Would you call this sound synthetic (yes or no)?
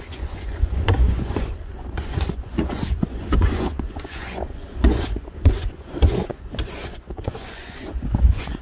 yes